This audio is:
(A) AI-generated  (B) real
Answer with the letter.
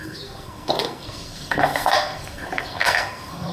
A